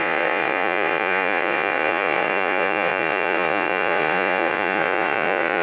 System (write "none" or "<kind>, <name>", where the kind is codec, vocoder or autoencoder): vocoder, Vocos